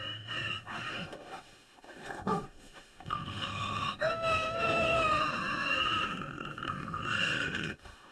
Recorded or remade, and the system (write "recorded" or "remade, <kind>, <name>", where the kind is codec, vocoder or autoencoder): remade, autoencoder, DAC-VAE